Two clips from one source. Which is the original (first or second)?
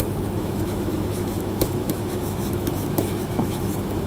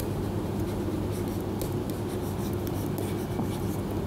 second